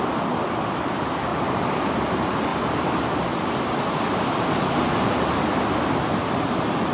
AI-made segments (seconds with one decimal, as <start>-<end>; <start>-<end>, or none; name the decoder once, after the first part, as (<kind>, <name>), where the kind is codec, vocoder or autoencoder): 1.3-1.9 (vocoder, BigVGAN v2); 2.5-4.6